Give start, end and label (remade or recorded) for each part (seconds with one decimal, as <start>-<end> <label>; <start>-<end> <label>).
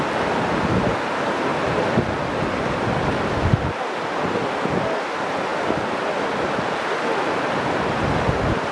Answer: 0.0-8.7 recorded